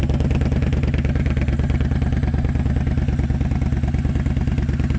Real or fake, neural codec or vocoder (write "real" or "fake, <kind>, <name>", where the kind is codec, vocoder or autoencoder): real